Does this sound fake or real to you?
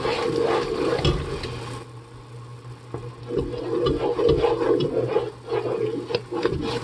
real